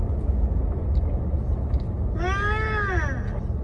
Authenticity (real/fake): real